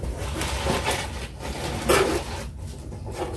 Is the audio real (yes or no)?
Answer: yes